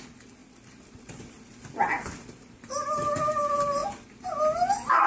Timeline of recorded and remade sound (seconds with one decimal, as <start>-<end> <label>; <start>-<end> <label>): 0.0-5.1 recorded